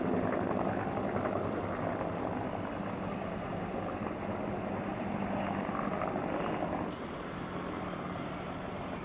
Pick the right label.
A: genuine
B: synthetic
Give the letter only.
A